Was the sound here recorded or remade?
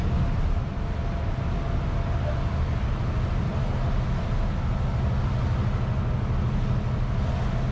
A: recorded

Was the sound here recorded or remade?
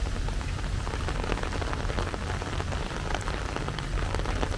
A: recorded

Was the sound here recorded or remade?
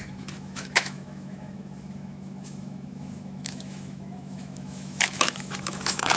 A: remade